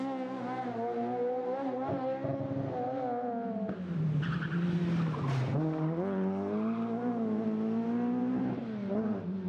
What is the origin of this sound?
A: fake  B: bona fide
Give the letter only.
B